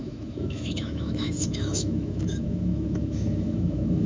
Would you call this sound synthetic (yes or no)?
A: yes